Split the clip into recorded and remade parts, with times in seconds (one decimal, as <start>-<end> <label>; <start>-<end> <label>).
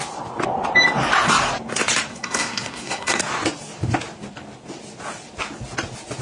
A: 0.0-2.1 recorded; 2.1-3.2 remade; 3.2-6.2 recorded